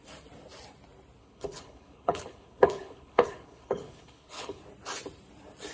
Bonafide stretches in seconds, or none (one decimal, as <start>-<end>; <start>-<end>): 0.0-1.2; 4.6-5.7